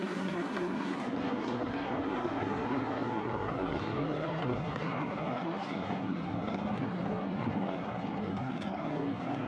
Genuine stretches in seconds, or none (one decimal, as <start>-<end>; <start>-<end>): none